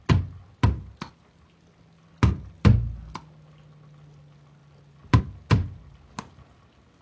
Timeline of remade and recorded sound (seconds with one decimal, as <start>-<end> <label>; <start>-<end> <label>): 0.0-7.0 recorded